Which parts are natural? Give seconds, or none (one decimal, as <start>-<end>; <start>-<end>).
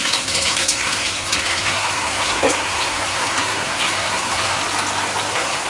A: 4.6-5.3